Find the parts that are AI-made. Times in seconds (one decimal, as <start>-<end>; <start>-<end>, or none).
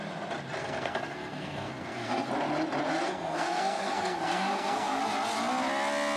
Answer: 0.6-2.3; 3.0-5.0